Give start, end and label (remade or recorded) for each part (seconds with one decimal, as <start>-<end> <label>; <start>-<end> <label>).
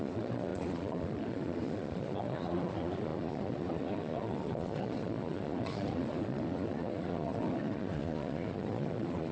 0.0-9.3 remade